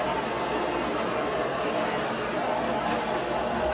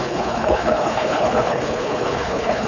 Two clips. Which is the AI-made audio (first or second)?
second